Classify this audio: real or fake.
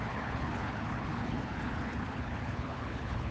fake